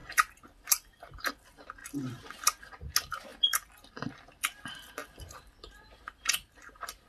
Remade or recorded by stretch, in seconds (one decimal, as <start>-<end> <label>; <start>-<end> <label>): 0.0-1.3 remade; 1.3-5.0 recorded; 5.0-7.1 remade